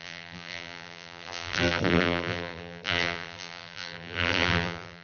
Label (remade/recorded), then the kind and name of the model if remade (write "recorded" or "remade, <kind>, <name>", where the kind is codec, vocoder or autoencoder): remade, vocoder, BigVGAN v2